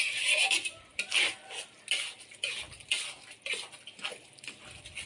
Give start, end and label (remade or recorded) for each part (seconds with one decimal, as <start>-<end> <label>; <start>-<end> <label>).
0.0-5.1 recorded